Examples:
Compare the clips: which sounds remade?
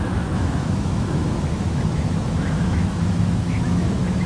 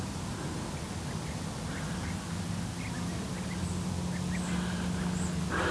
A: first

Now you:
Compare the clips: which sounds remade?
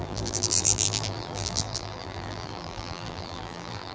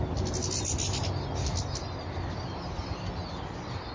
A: first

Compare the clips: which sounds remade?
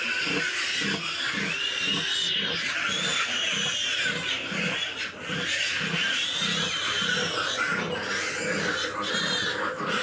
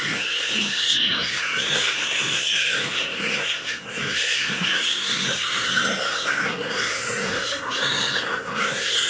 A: second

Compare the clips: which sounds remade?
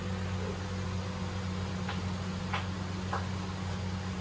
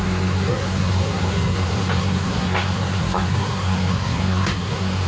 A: second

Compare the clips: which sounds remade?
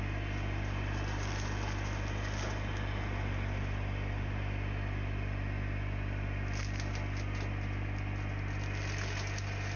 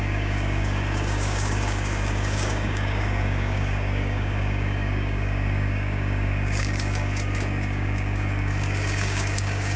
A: second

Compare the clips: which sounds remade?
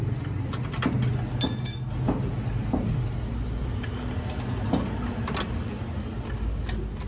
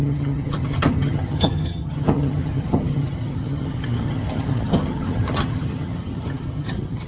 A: second